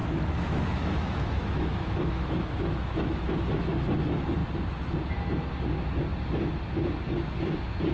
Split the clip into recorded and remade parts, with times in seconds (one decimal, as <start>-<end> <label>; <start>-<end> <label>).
0.0-3.3 remade; 3.3-7.9 recorded